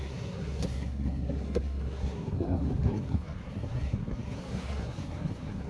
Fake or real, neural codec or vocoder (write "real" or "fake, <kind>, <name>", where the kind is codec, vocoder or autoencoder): fake, codec, SNAC